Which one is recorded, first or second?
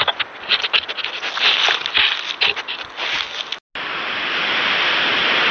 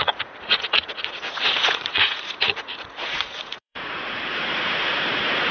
first